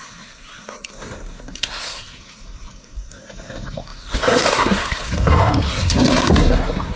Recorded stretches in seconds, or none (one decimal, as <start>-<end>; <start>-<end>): none